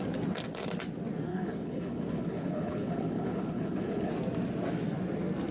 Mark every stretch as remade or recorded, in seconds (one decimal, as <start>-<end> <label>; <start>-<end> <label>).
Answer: 0.0-1.3 recorded; 1.3-4.1 remade; 4.1-5.5 recorded

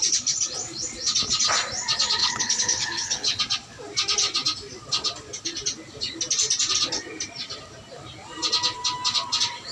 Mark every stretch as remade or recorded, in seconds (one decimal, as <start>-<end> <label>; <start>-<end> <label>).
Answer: 0.0-2.2 recorded; 2.2-3.4 remade; 3.4-9.7 recorded

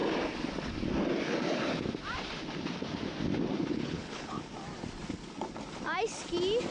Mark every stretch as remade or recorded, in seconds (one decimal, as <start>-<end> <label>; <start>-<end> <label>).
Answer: 0.0-3.7 recorded; 3.7-4.4 remade; 4.4-6.7 recorded

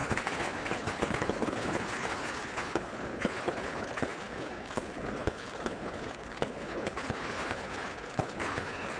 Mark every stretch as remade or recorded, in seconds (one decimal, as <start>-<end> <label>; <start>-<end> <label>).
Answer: 0.0-9.0 remade

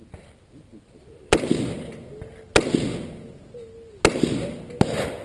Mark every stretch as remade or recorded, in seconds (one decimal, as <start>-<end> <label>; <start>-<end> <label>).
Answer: 0.0-5.2 recorded